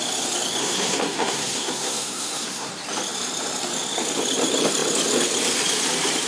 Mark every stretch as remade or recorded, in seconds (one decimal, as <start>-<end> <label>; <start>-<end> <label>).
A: 0.0-0.6 recorded; 0.6-2.7 remade; 2.7-6.3 recorded